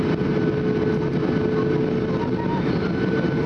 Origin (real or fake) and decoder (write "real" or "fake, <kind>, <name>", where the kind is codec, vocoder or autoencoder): real